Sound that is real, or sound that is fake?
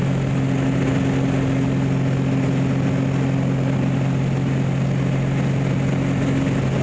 real